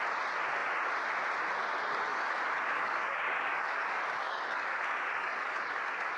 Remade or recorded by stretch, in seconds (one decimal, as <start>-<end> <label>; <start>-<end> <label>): 0.0-2.1 recorded; 2.1-5.8 remade; 5.8-6.2 recorded